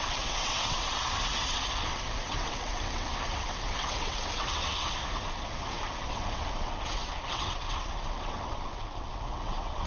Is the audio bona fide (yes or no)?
no